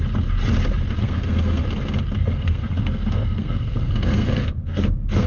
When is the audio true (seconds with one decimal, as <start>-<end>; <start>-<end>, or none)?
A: 0.0-1.0; 1.6-2.2

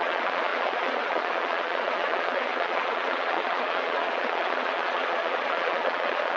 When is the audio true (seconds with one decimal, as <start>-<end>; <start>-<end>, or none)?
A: none

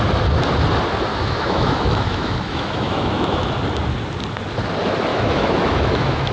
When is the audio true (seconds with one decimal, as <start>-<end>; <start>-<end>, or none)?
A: 0.0-1.1; 3.5-5.1